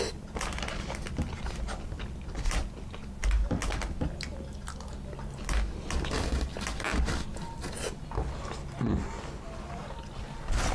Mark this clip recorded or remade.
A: recorded